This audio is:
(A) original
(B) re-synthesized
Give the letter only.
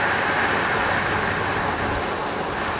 A